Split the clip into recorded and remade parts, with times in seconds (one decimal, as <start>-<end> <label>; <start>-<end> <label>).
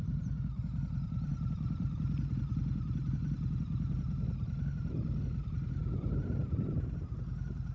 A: 0.0-7.7 remade